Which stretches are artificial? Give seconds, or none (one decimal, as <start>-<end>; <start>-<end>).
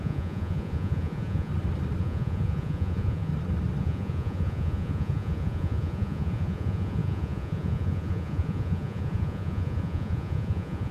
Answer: 0.0-1.5; 2.0-3.3; 3.8-10.9